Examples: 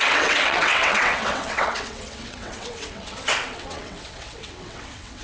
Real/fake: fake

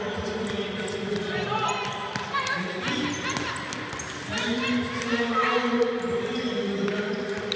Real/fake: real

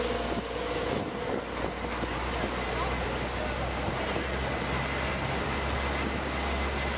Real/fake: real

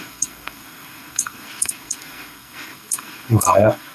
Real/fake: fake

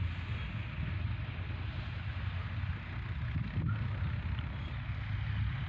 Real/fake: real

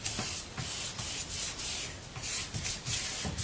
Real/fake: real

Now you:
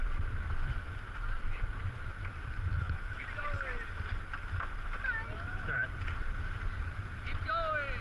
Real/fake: real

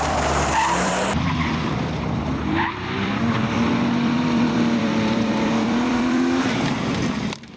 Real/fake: fake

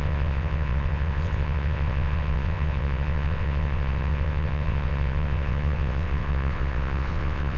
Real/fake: fake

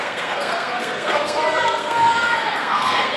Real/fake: fake